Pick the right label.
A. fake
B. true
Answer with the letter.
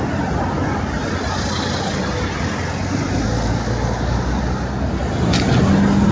B